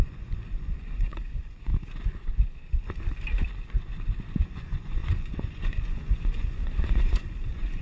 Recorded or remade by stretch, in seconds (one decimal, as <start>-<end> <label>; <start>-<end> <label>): 0.0-1.7 remade; 1.7-4.4 recorded; 4.4-7.8 remade